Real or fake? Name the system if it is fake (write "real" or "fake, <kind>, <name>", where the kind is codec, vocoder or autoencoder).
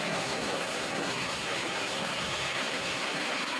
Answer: fake, codec, SNAC